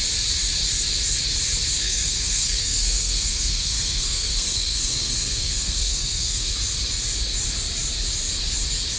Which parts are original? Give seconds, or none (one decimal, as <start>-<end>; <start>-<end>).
0.0-1.8; 6.5-9.0

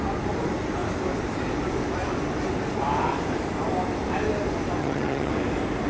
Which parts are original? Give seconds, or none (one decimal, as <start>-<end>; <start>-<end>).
0.0-4.8; 5.3-5.9